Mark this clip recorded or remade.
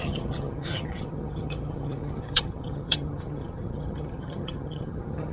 remade